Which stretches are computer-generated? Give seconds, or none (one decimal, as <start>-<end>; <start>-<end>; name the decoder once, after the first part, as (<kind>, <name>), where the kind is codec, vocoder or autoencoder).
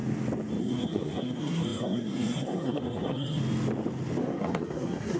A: 0.6-3.4 (codec, SNAC); 4.2-5.2